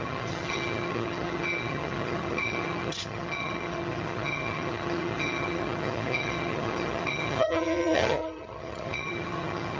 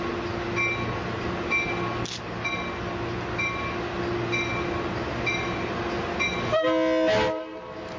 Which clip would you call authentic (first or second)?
second